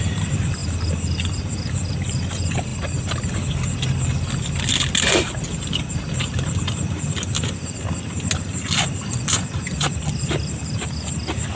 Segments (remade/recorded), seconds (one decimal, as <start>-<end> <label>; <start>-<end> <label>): 0.0-11.6 recorded